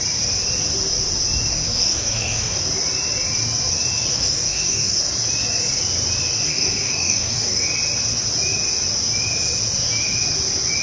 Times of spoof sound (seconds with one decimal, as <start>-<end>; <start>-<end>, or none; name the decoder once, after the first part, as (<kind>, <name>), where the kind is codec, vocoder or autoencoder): 1.5-2.6 (codec, DAC); 4.1-5.0; 6.5-7.6